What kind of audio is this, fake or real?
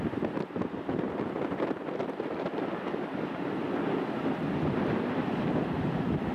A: real